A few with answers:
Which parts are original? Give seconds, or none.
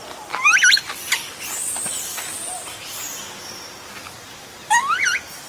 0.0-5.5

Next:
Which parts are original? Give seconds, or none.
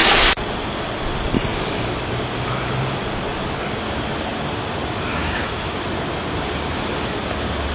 0.0-5.2; 5.8-7.7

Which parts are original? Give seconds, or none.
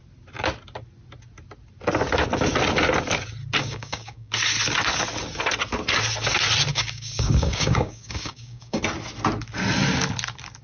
0.0-3.6; 4.3-6.7; 8.8-10.6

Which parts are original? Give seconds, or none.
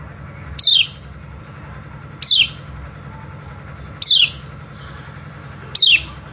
0.0-6.3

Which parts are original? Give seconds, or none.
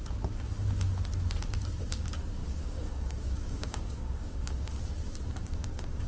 0.0-2.4; 4.7-5.4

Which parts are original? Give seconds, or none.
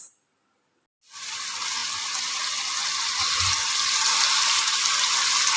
0.0-5.6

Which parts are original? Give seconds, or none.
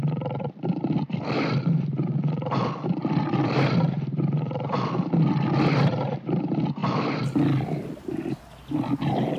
0.0-9.4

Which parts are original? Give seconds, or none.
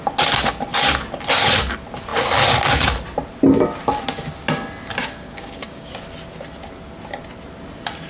0.0-5.0; 5.9-8.1